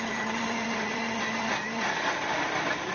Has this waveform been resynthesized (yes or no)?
yes